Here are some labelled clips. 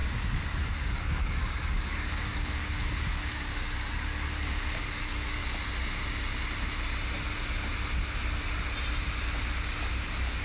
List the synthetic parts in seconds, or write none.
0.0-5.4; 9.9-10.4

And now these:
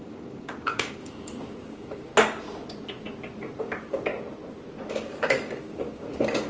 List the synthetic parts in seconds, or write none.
0.0-2.1; 3.6-4.1; 4.9-6.5